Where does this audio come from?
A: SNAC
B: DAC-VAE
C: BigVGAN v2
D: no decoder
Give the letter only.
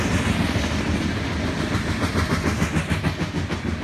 D